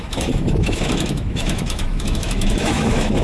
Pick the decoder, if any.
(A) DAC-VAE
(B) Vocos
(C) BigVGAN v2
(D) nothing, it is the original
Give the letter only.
A